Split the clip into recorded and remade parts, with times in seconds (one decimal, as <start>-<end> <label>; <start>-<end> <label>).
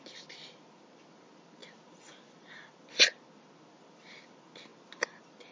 0.0-5.5 recorded